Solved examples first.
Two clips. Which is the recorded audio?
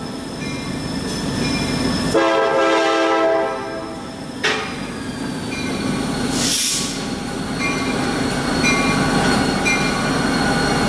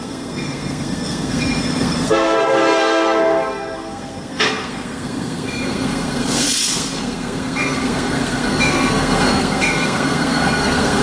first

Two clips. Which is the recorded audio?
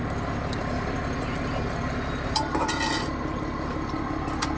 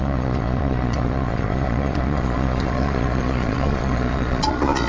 first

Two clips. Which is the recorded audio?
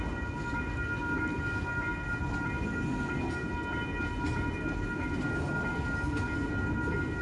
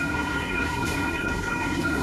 first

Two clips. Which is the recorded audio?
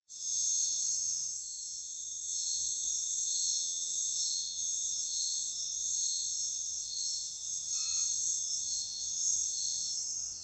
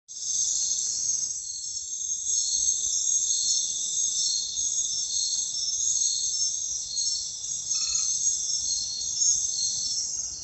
second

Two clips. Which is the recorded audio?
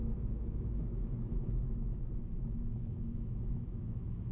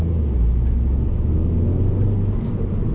second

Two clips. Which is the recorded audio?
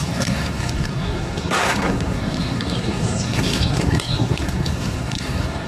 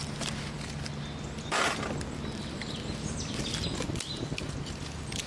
second